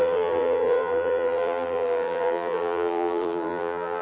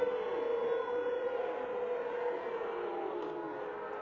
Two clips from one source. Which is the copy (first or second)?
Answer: first